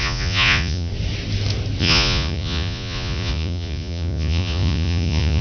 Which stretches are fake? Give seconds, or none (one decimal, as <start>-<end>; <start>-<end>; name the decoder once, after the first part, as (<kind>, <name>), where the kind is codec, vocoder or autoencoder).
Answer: 0.0-0.9 (vocoder, Vocos); 1.8-5.4